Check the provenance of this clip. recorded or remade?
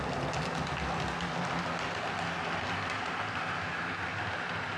recorded